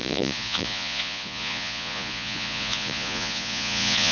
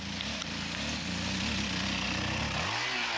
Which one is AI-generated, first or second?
first